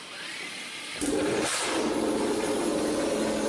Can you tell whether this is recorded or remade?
recorded